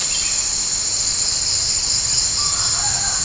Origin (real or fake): real